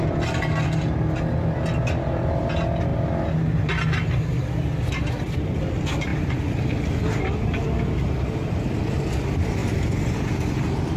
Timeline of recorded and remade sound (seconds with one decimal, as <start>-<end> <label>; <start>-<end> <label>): 0.0-11.0 recorded